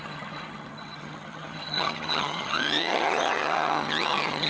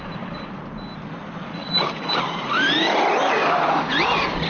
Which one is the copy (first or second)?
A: first